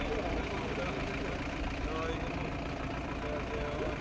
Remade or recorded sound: recorded